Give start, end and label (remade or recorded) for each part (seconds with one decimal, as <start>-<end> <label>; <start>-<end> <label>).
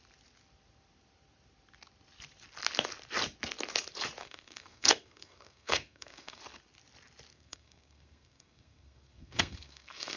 0.0-4.2 recorded; 4.2-6.4 remade; 6.4-7.3 recorded; 7.3-10.2 remade